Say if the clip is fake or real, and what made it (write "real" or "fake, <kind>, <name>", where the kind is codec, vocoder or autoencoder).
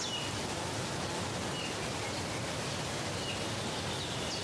real